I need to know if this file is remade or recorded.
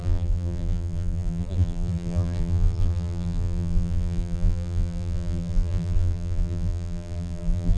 remade